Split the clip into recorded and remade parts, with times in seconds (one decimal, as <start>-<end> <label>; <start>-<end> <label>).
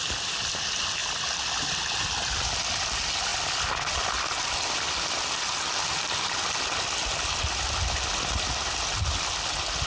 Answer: 0.0-9.9 recorded